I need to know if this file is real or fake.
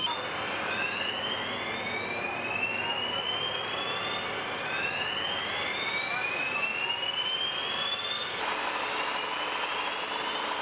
real